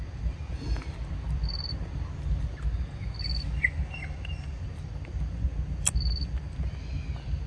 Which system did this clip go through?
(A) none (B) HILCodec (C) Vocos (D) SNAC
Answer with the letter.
A